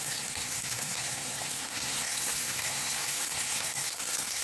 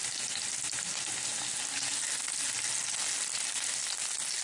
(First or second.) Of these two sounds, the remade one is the first